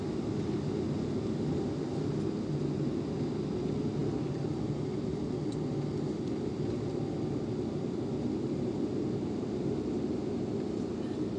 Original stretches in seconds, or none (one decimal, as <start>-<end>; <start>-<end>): 0.0-11.4